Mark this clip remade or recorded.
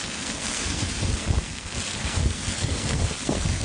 remade